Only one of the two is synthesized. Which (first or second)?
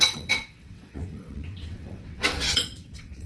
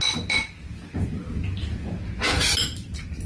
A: first